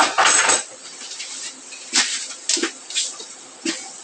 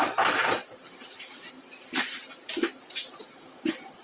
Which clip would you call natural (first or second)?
first